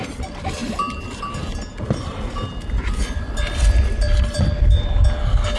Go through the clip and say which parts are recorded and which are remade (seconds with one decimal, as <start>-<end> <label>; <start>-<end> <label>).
0.0-5.6 recorded